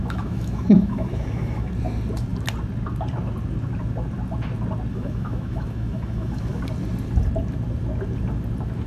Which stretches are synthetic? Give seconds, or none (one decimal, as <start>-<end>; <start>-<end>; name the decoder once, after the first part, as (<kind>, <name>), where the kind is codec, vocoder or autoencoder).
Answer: 0.0-1.7 (autoencoder, DAC-VAE); 4.9-6.6